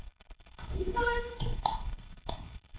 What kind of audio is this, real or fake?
fake